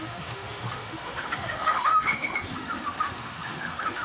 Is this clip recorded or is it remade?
remade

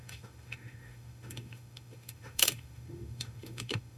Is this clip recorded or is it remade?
remade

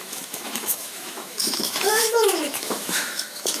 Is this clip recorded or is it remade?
remade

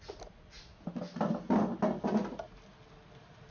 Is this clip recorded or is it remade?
recorded